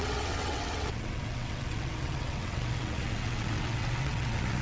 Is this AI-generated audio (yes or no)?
yes